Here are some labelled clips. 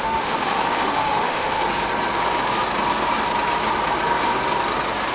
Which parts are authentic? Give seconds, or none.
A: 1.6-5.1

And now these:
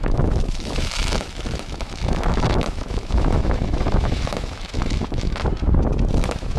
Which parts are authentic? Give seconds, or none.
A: 5.4-6.1

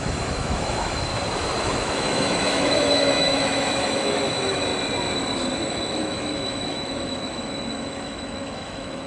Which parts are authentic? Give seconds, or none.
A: 1.1-1.6; 4.7-5.7

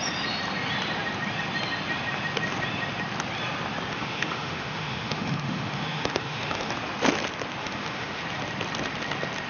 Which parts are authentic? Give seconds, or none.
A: 0.0-3.9; 6.7-7.6; 8.2-9.5

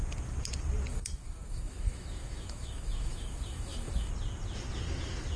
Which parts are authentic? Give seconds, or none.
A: 0.0-0.9; 4.1-5.4